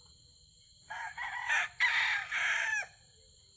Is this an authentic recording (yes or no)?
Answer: yes